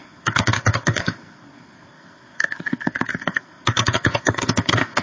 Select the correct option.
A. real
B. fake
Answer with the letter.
B